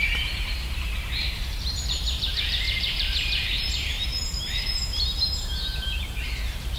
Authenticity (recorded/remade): remade